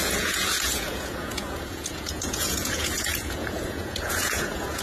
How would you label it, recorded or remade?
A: remade